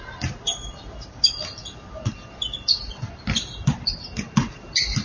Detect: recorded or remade recorded